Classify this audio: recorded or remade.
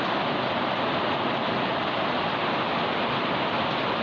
recorded